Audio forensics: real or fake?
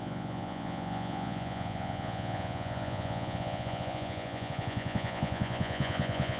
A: fake